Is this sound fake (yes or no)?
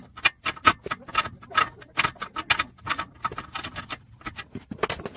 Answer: no